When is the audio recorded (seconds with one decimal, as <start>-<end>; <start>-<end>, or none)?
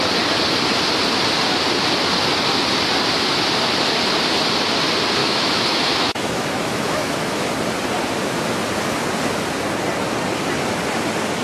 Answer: 0.0-5.2; 7.5-11.4